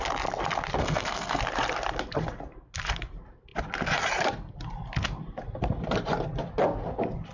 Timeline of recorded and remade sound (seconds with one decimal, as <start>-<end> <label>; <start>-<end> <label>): 0.0-0.8 recorded; 0.8-1.4 remade; 1.4-7.3 recorded